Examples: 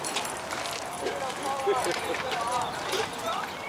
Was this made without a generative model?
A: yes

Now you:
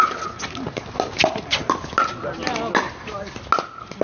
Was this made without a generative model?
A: yes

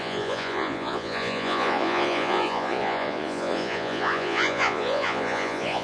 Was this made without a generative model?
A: no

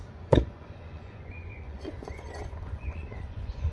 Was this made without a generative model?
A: no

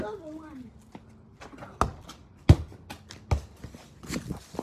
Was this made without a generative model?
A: yes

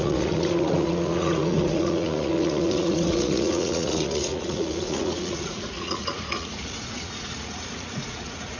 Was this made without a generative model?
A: no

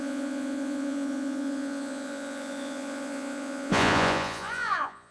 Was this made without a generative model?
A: no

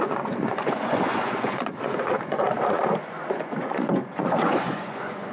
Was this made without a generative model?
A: no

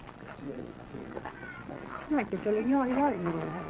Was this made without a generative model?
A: no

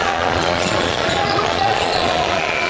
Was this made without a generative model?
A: no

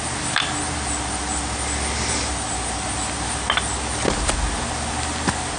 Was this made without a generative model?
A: yes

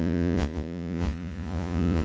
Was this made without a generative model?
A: no